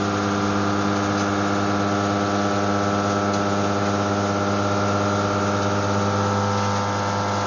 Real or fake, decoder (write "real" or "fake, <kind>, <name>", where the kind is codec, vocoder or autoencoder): real